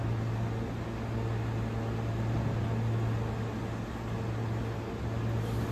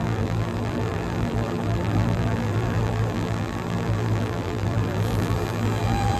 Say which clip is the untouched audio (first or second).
first